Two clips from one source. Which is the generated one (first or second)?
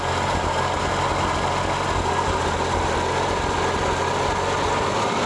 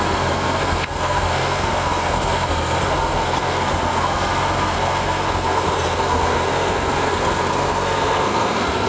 second